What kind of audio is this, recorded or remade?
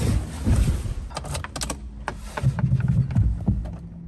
recorded